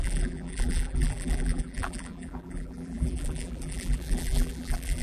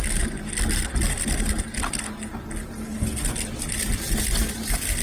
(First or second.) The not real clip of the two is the first